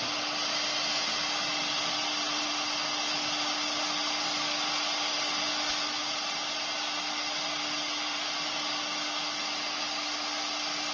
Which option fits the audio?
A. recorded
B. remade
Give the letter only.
A